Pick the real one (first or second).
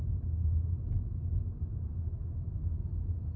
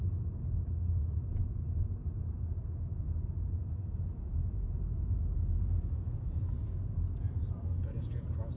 first